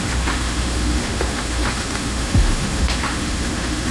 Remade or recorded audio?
remade